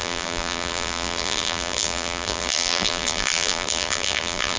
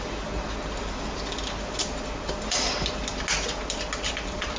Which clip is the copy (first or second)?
first